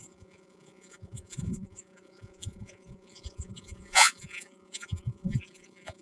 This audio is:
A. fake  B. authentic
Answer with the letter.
A